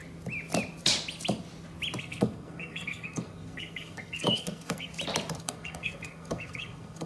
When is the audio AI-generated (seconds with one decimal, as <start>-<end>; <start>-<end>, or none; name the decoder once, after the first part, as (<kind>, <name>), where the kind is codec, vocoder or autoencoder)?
2.0-4.9 (codec, SNAC); 5.4-7.1